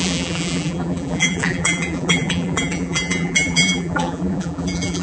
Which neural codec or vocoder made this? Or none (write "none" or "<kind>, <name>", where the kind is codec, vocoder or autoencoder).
vocoder, BigVGAN v2